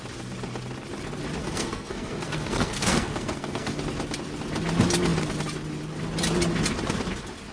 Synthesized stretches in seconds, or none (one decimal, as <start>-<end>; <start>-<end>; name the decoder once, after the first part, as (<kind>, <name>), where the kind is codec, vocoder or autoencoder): 1.4-3.8 (codec, SNAC)